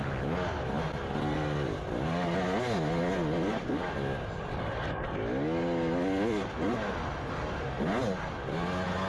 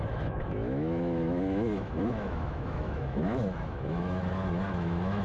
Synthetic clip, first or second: second